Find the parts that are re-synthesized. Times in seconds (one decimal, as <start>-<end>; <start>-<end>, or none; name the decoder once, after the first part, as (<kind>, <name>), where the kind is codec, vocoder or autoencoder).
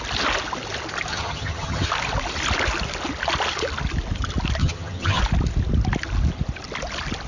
1.1-1.9 (vocoder, HiFi-GAN); 4.6-5.2